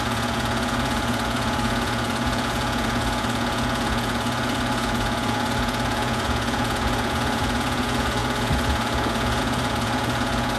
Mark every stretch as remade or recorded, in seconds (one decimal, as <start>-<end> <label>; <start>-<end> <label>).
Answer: 0.0-10.6 remade